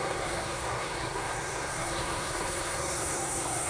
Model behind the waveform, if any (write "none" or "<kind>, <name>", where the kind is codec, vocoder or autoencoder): codec, SNAC